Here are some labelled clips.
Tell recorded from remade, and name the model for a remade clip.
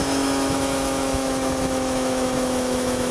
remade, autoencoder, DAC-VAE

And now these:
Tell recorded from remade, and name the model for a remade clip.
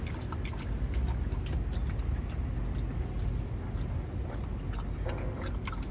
recorded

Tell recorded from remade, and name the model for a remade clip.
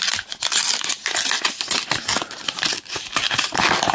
recorded